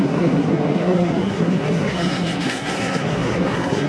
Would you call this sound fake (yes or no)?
yes